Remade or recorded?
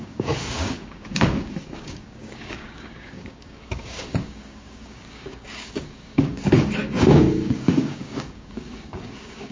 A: remade